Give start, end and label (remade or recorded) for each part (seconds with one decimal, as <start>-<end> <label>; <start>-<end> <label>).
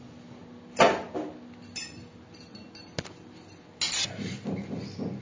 0.0-5.2 recorded